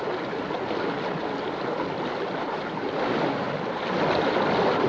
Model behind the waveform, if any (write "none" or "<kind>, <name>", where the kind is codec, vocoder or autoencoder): none